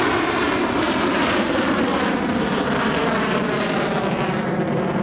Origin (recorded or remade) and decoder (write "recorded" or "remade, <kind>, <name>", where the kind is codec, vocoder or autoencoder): remade, vocoder, BigVGAN v2